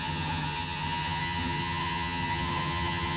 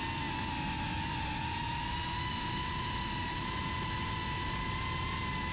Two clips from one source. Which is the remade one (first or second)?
first